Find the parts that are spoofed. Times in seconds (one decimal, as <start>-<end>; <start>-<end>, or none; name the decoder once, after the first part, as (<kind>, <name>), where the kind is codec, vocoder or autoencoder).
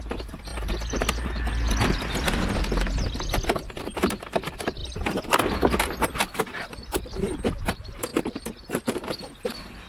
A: 8.1-8.8 (vocoder, BigVGAN v2)